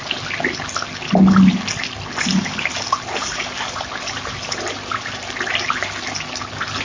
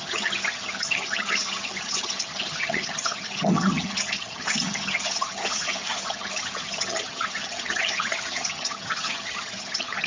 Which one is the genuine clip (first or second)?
first